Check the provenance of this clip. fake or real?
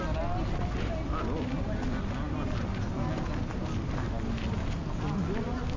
real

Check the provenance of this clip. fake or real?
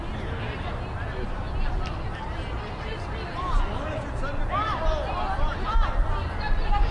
real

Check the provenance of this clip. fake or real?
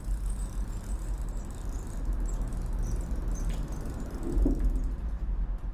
real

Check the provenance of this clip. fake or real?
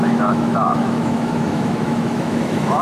fake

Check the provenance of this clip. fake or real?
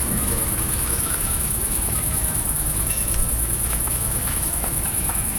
fake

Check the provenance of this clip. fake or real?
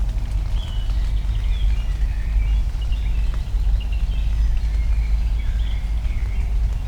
real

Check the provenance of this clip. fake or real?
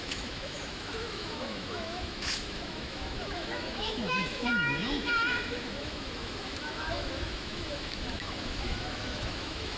fake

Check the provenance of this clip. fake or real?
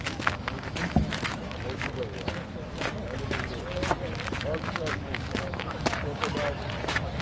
fake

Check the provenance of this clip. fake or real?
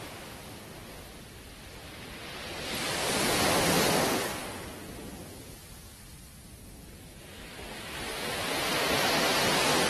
real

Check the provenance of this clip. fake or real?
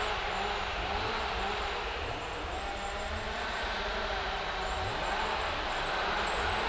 real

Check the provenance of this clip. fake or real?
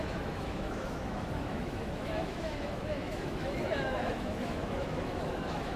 fake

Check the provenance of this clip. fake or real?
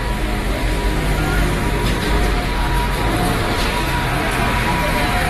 real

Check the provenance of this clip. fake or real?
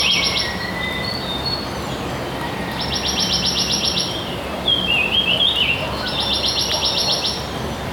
real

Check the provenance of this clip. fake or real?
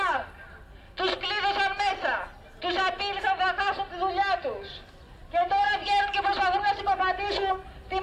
real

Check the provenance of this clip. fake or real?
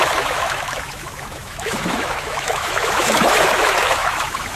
fake